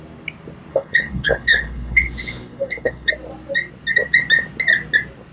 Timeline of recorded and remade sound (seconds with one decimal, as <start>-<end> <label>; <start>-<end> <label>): 0.0-0.7 recorded; 0.7-3.1 remade; 3.1-5.3 recorded